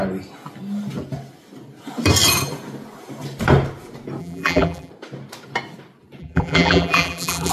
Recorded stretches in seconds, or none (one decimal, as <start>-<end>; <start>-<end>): 0.0-4.2; 4.9-6.2